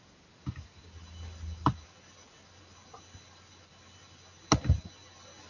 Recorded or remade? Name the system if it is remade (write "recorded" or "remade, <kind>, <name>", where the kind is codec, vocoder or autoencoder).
recorded